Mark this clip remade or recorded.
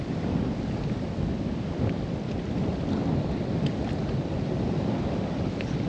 recorded